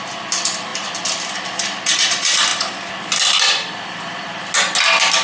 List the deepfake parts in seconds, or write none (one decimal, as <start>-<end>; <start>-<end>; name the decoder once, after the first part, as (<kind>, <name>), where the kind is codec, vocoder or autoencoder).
none